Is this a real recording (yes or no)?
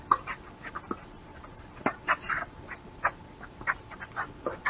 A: yes